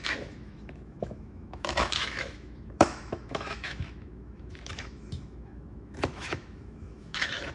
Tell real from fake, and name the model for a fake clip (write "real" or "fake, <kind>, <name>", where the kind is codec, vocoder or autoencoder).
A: fake, autoencoder, DAC-VAE